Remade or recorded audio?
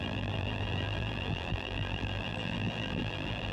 remade